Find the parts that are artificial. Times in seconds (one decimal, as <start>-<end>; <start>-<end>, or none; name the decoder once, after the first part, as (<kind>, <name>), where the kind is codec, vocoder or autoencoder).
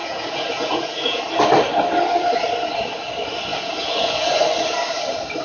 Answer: 0.0-1.2 (vocoder, Vocos); 3.5-4.4